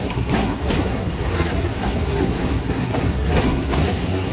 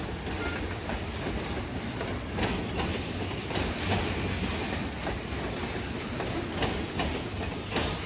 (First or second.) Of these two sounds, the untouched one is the second